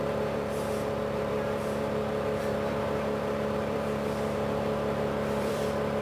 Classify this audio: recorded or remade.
remade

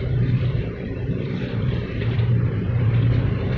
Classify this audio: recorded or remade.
remade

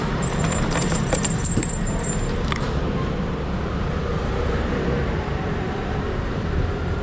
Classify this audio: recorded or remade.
remade